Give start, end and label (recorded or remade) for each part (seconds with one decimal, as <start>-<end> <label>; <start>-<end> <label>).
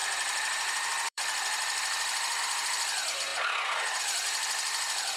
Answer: 0.0-2.4 remade; 2.4-5.2 recorded